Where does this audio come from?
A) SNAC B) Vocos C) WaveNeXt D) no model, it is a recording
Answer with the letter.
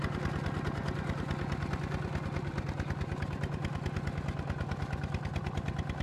D